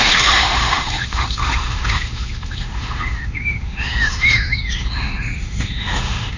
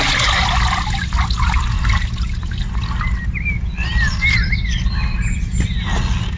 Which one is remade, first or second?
first